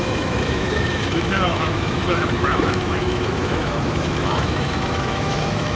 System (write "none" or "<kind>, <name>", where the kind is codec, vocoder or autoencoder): autoencoder, DAC-VAE